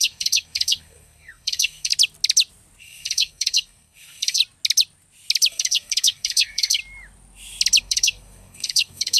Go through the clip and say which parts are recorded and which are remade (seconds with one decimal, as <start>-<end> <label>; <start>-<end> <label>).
0.0-1.9 remade; 1.9-2.8 recorded; 2.8-4.4 remade; 4.4-5.5 recorded; 5.5-6.8 remade; 6.8-7.8 recorded; 7.8-9.2 remade